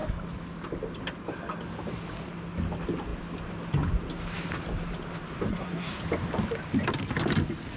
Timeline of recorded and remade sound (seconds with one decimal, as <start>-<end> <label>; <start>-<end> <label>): 0.0-5.5 recorded; 5.5-6.0 remade; 6.0-7.8 recorded